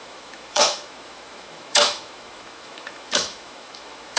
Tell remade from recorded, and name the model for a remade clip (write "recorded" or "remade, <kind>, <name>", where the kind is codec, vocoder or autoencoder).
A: remade, autoencoder, DAC-VAE